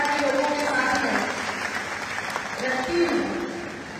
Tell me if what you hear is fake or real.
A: real